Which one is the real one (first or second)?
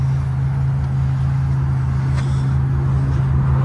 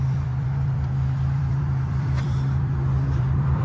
first